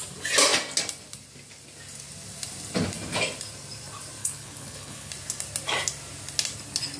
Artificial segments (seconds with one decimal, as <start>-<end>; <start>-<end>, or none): 4.2-5.1